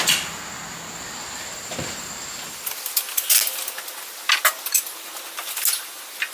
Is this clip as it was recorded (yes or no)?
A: yes